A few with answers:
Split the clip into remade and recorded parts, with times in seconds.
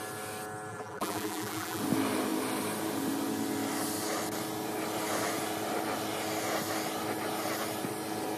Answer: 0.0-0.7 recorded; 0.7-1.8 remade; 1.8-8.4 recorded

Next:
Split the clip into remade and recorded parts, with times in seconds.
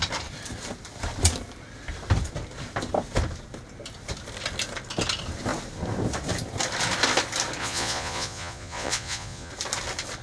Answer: 0.0-7.6 recorded; 7.6-9.5 remade; 9.5-10.2 recorded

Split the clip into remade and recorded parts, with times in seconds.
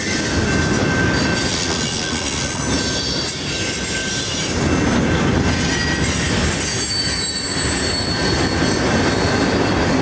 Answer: 0.0-1.5 recorded; 1.5-2.6 remade; 2.6-10.0 recorded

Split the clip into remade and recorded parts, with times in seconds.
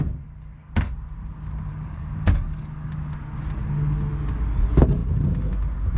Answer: 0.0-1.7 recorded; 1.7-2.9 remade; 2.9-6.0 recorded